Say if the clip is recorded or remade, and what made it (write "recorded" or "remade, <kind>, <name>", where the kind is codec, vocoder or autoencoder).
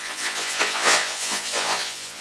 remade, vocoder, Vocos